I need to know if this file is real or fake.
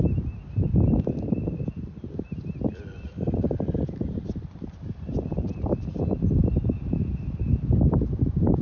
real